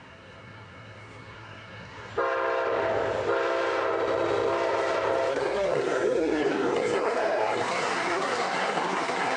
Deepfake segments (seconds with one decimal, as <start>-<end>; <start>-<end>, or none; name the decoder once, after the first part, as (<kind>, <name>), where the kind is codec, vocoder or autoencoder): 0.0-2.1 (codec, SNAC); 5.3-9.4